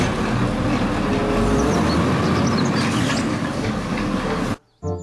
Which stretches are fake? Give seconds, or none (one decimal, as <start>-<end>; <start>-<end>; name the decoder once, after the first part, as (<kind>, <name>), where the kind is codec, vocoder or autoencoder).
3.3-4.4 (codec, DAC)